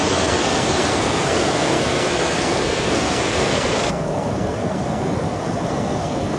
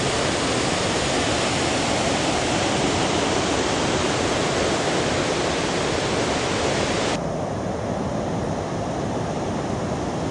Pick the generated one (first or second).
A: first